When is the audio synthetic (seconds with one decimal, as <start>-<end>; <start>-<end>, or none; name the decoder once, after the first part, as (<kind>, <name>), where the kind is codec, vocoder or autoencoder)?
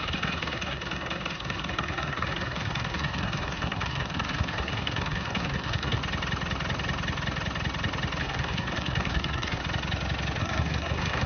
0.0-6.0 (codec, SNAC); 8.2-9.6; 10.4-11.3